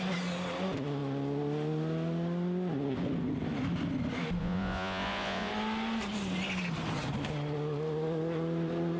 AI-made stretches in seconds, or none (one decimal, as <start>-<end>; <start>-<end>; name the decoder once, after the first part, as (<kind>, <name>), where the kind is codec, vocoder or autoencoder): 4.4-5.5 (vocoder, Vocos)